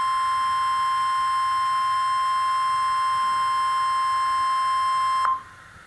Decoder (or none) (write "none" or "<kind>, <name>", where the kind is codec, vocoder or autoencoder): none